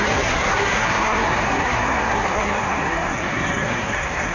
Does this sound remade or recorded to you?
remade